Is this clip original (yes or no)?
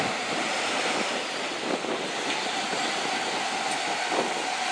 yes